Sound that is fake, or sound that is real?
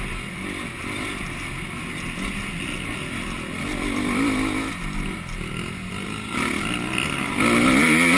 real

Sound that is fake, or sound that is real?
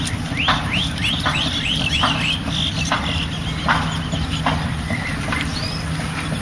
real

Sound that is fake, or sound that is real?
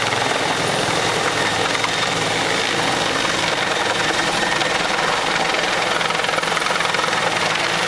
real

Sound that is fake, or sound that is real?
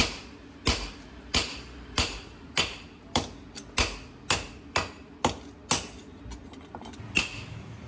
real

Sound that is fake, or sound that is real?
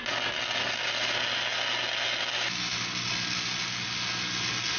real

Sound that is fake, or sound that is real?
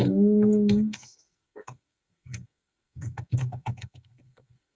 fake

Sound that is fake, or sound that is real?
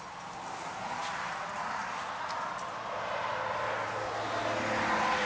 real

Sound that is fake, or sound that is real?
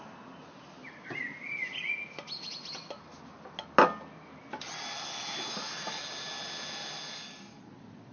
real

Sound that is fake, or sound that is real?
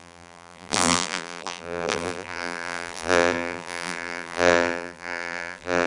fake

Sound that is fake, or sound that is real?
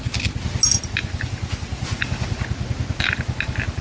real